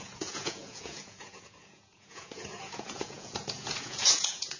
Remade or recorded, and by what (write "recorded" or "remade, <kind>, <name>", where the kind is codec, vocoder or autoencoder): remade, vocoder, Vocos